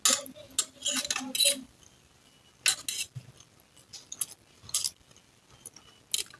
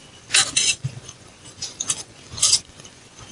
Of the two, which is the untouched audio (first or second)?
first